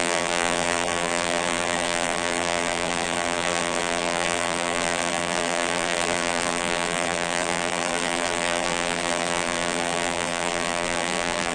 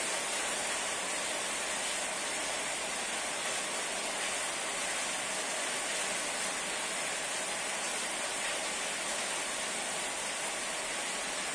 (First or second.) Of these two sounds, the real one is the second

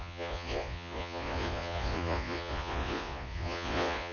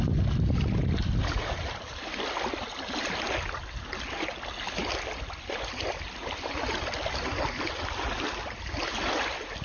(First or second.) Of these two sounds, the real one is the second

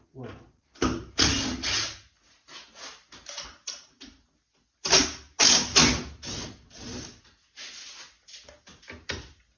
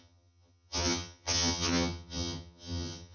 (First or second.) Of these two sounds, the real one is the first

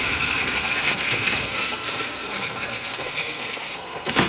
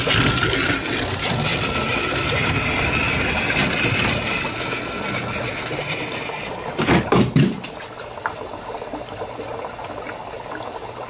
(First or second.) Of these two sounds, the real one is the second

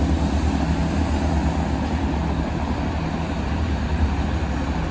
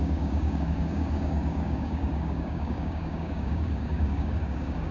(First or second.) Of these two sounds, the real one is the first